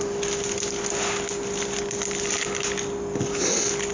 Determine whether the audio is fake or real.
real